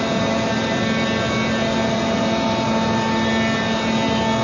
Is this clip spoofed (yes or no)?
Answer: no